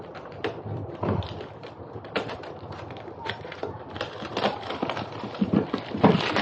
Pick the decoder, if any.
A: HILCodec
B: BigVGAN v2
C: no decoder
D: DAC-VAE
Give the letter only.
B